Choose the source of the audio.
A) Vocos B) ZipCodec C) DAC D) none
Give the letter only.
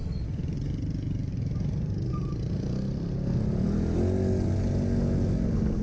D